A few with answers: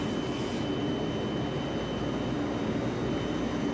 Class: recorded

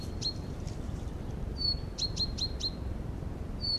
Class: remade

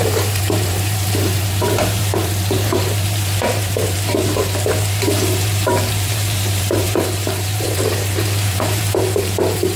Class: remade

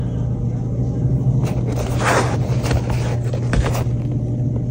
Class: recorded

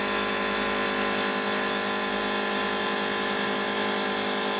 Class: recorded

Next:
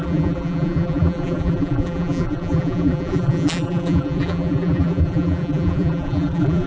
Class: remade